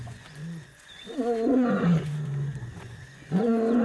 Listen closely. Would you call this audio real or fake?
fake